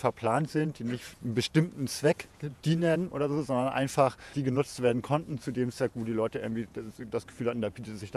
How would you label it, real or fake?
fake